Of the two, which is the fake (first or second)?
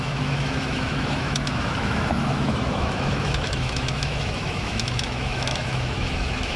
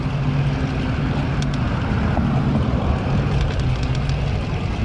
first